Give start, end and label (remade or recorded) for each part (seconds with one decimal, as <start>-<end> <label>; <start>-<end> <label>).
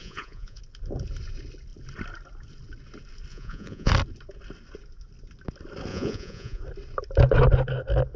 0.0-0.6 remade; 0.6-3.3 recorded; 3.3-3.9 remade; 3.9-5.9 recorded; 5.9-6.6 remade; 6.6-8.2 recorded